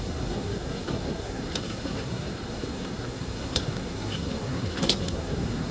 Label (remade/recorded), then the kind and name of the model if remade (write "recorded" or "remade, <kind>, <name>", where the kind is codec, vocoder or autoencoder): remade, codec, SNAC